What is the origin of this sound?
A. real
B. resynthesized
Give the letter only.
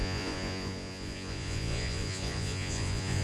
B